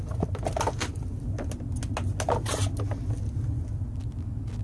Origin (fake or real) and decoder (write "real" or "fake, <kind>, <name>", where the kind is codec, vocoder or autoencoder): real